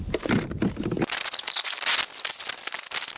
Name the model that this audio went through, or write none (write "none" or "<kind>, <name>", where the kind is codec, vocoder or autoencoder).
none